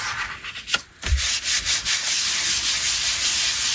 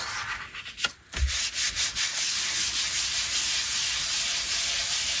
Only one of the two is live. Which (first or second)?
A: second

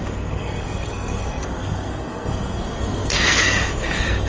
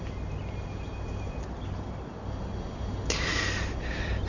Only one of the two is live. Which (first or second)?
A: second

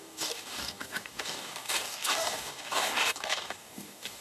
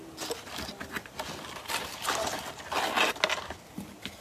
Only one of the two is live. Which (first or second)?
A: second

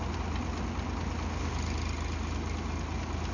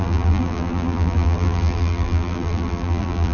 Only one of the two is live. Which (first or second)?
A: first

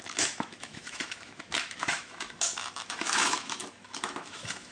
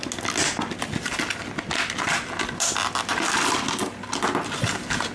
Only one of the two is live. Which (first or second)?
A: second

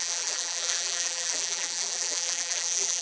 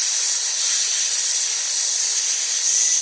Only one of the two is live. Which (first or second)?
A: second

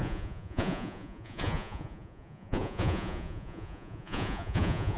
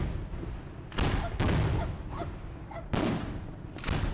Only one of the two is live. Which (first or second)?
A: second